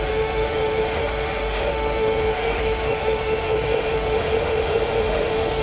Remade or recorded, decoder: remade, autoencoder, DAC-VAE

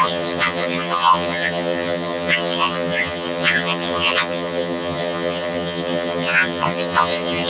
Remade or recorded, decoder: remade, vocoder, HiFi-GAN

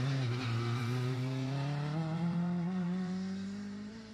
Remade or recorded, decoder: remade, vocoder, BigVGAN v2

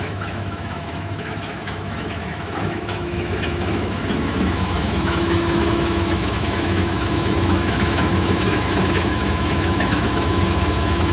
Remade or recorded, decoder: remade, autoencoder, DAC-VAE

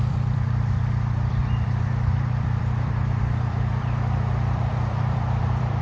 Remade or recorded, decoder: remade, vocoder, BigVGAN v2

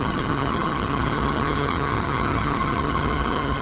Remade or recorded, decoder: remade, vocoder, HiFi-GAN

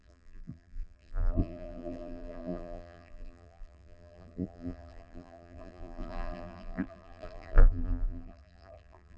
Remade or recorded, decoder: remade, vocoder, BigVGAN v2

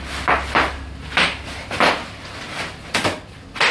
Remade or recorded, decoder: remade, vocoder, BigVGAN v2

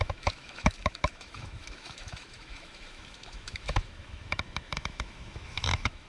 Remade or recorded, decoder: remade, autoencoder, DAC-VAE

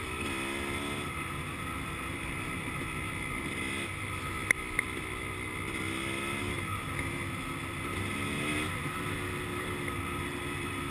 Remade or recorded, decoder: recorded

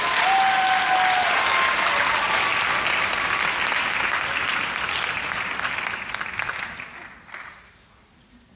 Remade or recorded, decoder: recorded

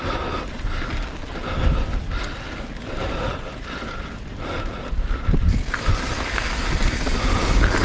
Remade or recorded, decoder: recorded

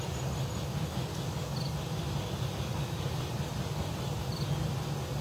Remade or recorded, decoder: recorded